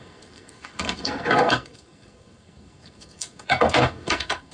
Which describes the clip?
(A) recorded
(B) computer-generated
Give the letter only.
B